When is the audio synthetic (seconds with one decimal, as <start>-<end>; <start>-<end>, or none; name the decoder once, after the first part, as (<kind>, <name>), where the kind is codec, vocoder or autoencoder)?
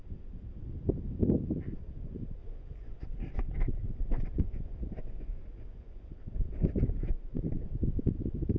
2.4-3.0 (vocoder, Vocos); 3.8-6.1